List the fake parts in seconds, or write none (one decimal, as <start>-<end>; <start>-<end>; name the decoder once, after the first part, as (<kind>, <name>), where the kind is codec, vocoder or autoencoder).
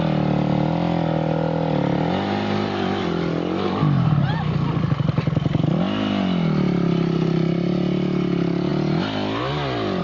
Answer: none